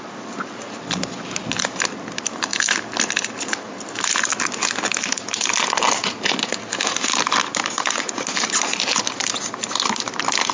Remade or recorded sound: recorded